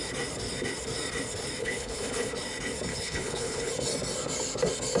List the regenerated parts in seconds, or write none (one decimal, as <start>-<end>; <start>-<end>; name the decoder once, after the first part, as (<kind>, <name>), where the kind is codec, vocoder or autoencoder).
1.6-2.3 (codec, HILCodec); 2.9-3.7